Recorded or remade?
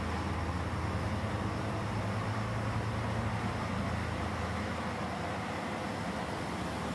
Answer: recorded